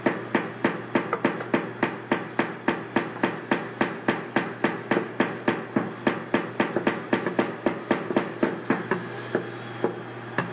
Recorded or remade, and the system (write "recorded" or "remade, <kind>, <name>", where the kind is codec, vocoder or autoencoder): recorded